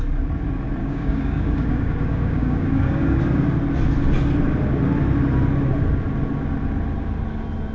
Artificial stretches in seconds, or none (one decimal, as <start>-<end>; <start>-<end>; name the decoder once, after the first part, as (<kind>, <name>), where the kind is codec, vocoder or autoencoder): 0.8-3.2 (codec, DAC)